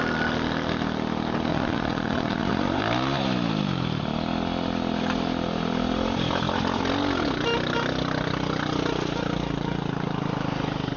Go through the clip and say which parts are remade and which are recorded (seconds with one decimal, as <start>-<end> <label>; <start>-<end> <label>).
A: 0.0-1.5 recorded; 1.5-2.8 remade; 2.8-11.0 recorded